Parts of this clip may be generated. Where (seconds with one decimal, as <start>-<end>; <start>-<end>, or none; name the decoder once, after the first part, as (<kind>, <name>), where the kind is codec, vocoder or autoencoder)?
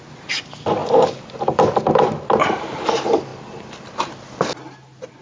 0.8-2.5 (vocoder, BigVGAN v2)